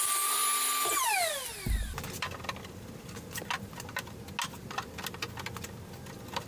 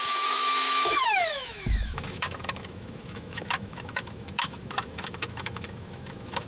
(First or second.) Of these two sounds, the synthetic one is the second